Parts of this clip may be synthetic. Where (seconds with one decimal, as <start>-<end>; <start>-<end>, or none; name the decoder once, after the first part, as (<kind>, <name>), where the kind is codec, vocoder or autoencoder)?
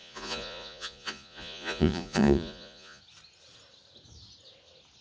0.0-3.0 (vocoder, Vocos)